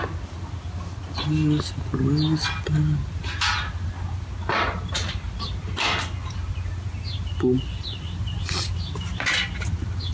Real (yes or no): yes